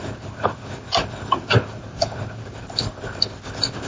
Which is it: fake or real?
real